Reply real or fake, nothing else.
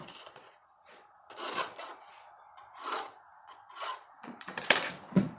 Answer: fake